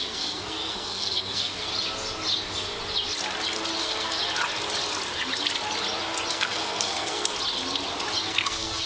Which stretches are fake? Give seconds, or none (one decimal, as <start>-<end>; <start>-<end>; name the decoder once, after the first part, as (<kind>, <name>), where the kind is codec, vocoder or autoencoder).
0.0-1.7 (codec, SNAC); 3.8-4.2; 6.3-7.3; 8.2-8.9